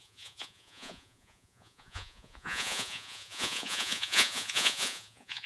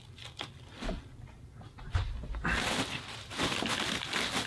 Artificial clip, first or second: first